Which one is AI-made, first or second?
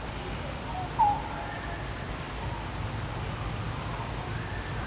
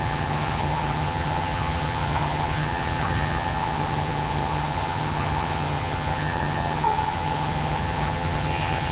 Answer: second